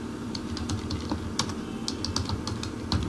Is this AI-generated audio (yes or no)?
no